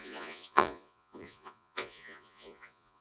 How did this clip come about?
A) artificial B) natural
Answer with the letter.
A